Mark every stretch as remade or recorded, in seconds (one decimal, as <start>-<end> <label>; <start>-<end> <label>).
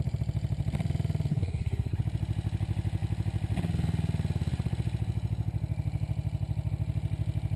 0.0-1.3 recorded; 1.3-2.0 remade; 2.0-7.6 recorded